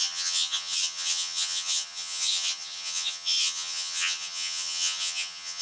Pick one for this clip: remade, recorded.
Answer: remade